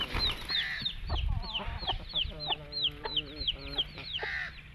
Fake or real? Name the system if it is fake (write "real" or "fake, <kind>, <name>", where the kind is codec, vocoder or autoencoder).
real